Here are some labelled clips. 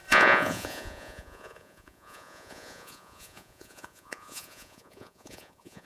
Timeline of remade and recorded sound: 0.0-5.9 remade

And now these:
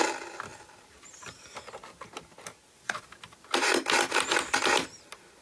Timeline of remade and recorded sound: 0.0-5.4 recorded